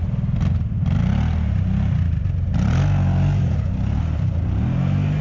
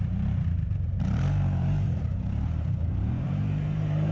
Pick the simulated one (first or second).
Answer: second